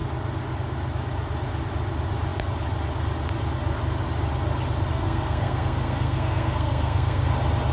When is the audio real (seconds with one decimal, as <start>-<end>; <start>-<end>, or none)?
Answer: 0.0-4.9; 7.3-7.7